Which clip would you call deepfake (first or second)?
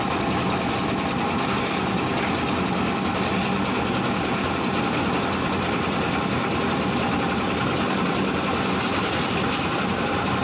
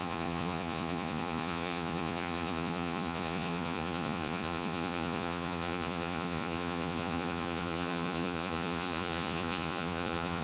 second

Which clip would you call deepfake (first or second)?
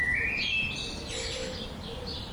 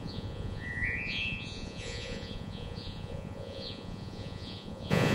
second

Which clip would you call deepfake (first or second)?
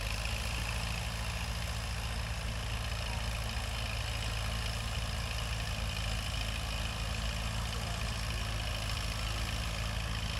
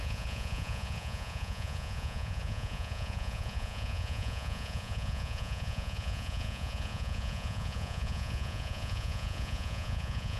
second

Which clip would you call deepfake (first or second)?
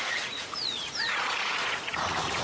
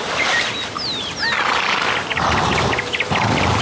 first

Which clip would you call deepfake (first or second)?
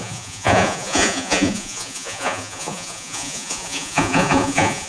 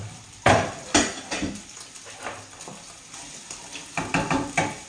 first